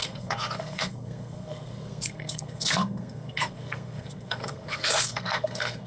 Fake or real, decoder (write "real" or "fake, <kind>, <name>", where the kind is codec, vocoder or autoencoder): fake, codec, SNAC